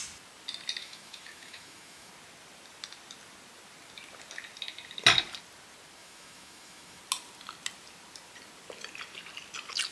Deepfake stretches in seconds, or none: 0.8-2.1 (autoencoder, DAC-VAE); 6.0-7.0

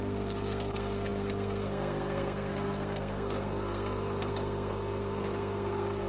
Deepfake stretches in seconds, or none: 0.0-6.1 (codec, SNAC)

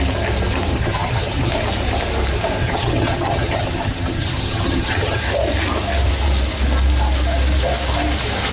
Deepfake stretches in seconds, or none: 0.7-1.5 (vocoder, HiFi-GAN); 2.6-5.2